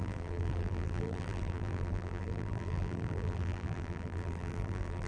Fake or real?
fake